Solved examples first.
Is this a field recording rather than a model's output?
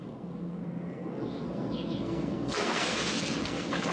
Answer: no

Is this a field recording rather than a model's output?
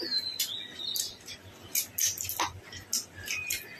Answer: yes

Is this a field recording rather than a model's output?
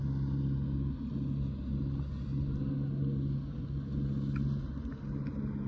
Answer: yes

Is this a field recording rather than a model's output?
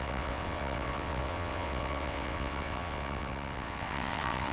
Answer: no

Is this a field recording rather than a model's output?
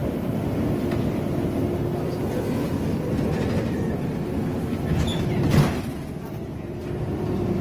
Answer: yes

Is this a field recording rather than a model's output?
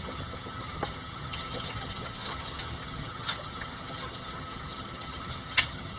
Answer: no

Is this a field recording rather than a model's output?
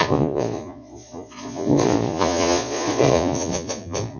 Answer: no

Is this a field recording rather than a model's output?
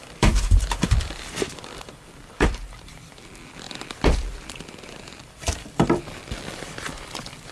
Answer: no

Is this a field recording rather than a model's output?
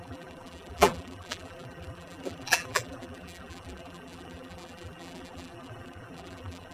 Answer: no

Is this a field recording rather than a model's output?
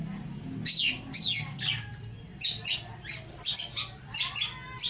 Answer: yes